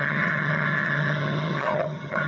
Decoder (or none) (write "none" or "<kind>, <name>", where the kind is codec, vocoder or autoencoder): vocoder, HiFi-GAN